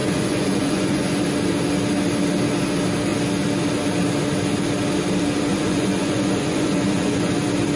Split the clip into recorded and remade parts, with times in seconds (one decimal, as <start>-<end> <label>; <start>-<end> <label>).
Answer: 0.0-1.2 remade; 1.2-5.5 recorded; 5.5-7.3 remade; 7.3-7.8 recorded